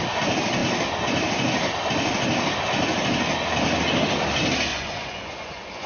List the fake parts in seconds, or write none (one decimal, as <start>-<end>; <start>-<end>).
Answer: 4.7-5.9